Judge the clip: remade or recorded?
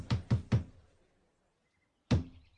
recorded